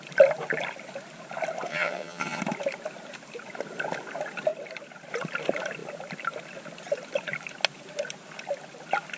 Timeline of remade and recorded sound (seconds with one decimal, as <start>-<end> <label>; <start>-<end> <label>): 0.0-1.7 recorded; 1.7-2.4 remade; 2.4-9.2 recorded

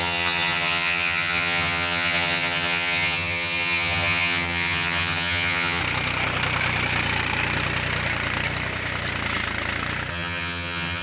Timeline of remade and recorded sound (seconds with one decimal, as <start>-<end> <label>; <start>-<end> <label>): 0.0-5.8 remade; 5.8-10.1 recorded; 10.1-11.0 remade

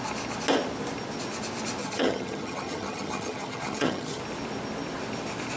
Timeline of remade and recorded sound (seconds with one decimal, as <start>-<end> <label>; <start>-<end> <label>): 0.0-1.8 recorded; 1.8-4.2 remade; 4.2-5.6 recorded

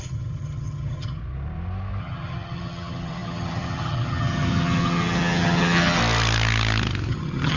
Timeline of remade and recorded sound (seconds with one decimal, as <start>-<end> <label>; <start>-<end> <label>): 0.0-1.2 remade; 1.2-2.0 recorded; 2.0-6.0 remade; 6.0-7.1 recorded; 7.1-7.6 remade

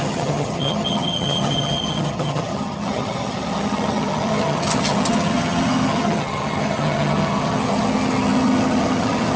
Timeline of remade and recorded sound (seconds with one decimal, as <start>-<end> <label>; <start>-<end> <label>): 0.0-9.4 remade

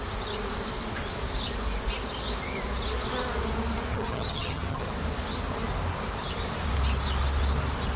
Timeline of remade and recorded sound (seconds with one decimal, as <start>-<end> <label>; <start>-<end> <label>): 0.0-3.9 recorded; 3.9-4.9 remade; 4.9-8.0 recorded